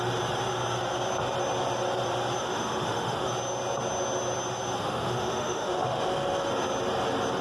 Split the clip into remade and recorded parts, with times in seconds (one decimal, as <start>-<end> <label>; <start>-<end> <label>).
0.0-2.4 recorded; 2.4-3.3 remade; 3.3-4.8 recorded; 4.8-6.5 remade; 6.5-7.4 recorded

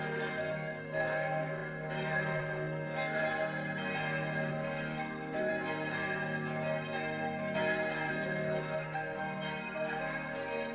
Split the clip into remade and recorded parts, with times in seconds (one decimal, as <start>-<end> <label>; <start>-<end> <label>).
0.0-3.2 remade; 3.2-4.5 recorded; 4.5-5.5 remade; 5.5-8.1 recorded; 8.1-10.7 remade

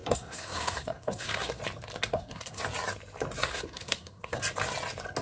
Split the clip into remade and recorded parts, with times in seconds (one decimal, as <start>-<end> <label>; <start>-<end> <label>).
0.0-1.6 remade; 1.6-2.1 recorded; 2.1-2.6 remade; 2.6-3.5 recorded; 3.5-4.4 remade; 4.4-5.2 recorded

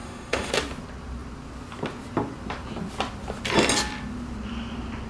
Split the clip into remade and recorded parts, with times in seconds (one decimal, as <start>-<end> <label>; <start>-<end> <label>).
0.0-0.5 remade; 0.5-5.1 recorded

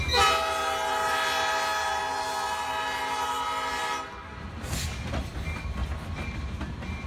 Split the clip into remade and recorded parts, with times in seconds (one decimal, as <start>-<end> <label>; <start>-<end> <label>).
0.0-7.1 recorded

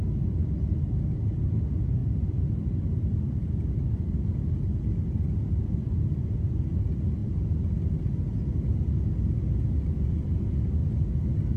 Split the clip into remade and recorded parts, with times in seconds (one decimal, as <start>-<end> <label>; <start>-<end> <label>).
0.0-11.6 recorded